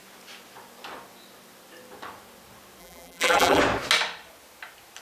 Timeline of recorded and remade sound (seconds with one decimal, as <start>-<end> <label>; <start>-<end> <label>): 0.0-2.8 recorded; 2.8-3.6 remade; 3.6-5.0 recorded